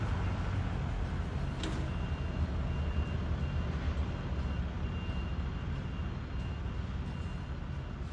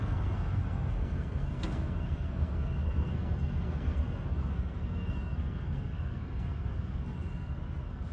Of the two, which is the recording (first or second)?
first